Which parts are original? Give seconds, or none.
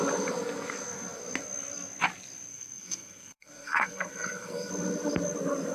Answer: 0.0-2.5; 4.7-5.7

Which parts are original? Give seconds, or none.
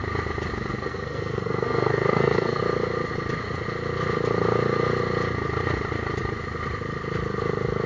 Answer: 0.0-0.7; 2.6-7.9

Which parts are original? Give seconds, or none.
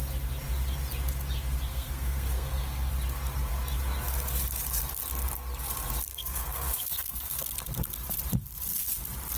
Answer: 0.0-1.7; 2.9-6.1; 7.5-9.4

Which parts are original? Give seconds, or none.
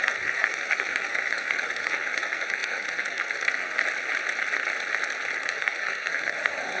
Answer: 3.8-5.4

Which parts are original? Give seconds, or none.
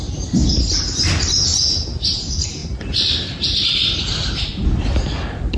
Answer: 0.0-5.6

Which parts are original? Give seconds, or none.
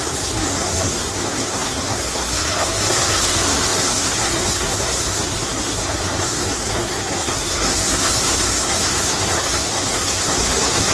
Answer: none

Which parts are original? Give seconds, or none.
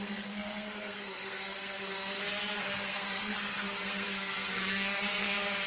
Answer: none